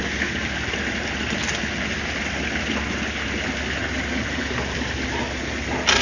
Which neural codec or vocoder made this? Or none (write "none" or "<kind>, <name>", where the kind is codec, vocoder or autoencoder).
none